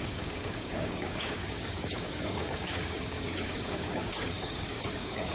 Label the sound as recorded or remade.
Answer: remade